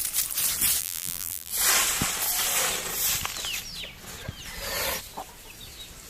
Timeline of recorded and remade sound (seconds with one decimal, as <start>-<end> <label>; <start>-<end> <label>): 0.0-0.8 recorded; 0.8-1.5 remade; 1.5-6.1 recorded